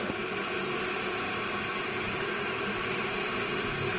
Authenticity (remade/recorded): remade